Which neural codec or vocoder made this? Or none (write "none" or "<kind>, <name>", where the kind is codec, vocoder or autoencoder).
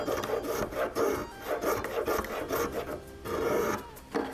none